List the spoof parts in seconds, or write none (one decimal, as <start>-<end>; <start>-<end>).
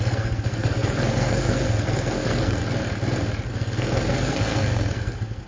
0.0-2.6; 3.5-5.5